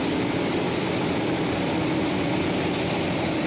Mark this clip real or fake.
real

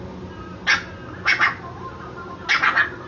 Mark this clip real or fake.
real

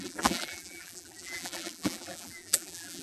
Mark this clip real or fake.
fake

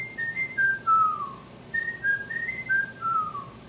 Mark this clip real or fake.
fake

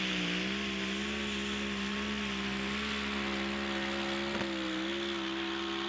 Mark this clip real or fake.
real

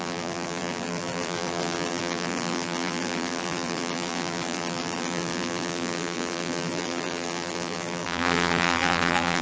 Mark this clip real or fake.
fake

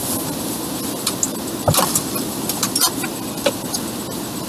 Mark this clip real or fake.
real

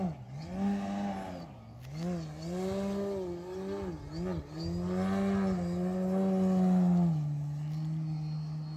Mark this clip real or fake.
real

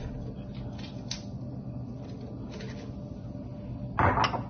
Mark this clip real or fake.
real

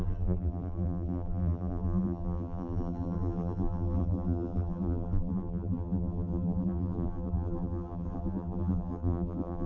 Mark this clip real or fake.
fake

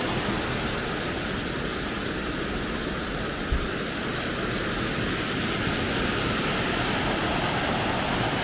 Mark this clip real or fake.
real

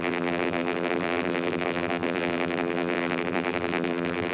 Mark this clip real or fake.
fake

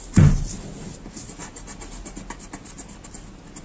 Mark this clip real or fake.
real